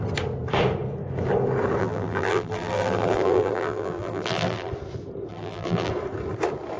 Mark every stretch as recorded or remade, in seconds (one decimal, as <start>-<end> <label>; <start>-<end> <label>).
0.0-1.8 recorded; 1.8-4.7 remade; 4.7-5.3 recorded; 5.3-5.9 remade; 5.9-6.8 recorded